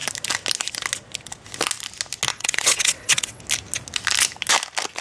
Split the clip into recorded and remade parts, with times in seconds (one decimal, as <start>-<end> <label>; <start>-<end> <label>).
0.0-2.3 recorded; 2.3-3.4 remade; 3.4-5.0 recorded